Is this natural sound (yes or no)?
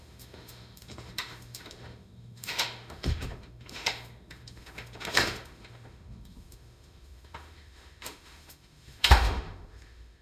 no